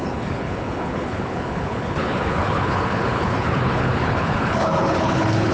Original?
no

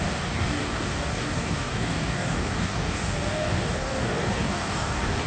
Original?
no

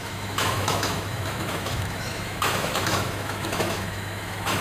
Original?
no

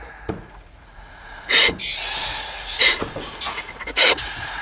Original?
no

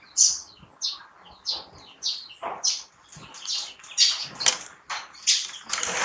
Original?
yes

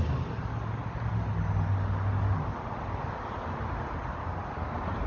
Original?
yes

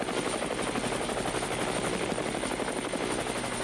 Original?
yes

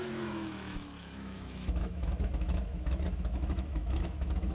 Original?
no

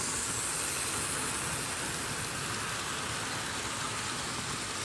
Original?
yes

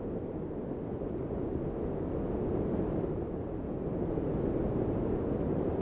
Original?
yes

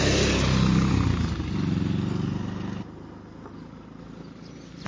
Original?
yes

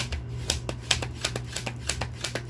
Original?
yes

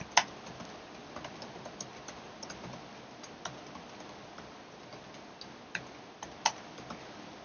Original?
yes